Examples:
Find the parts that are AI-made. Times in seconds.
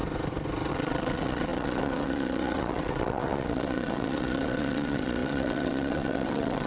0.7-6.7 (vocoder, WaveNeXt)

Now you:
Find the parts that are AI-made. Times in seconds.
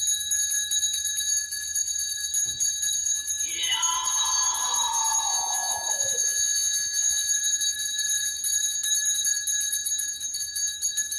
5.3-7.3 (vocoder, Vocos)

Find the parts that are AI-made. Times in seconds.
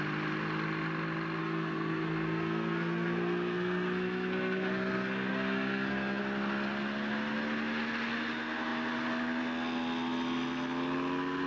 1.4-6.2 (codec, SNAC)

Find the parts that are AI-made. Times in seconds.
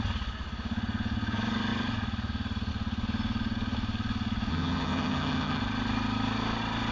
4.5-5.6 (vocoder, HiFi-GAN)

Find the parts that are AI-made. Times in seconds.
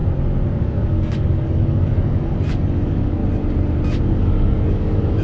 0.6-3.2 (codec, DAC); 4.2-5.2